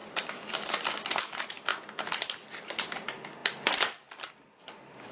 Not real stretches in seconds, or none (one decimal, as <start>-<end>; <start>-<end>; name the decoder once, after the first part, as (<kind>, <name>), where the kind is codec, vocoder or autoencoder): 1.2-1.7 (vocoder, BigVGAN v2); 2.4-5.1